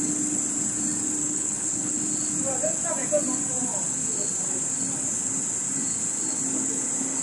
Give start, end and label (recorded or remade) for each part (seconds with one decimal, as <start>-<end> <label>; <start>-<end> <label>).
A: 0.0-1.2 recorded; 1.2-2.0 remade; 2.0-7.2 recorded